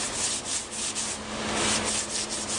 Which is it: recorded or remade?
recorded